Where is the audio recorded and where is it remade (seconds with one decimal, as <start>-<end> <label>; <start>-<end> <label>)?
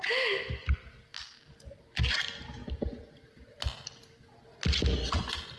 0.0-1.1 recorded; 1.1-1.8 remade; 1.8-2.6 recorded; 2.6-3.8 remade; 3.8-5.6 recorded